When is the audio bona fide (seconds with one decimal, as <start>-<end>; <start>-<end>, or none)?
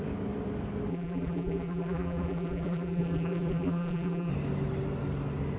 0.0-0.9; 4.3-5.6